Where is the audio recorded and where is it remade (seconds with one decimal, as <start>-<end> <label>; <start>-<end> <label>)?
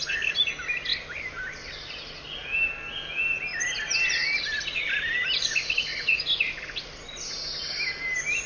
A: 0.0-8.5 recorded